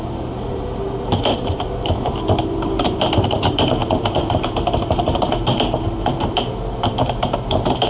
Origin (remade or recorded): remade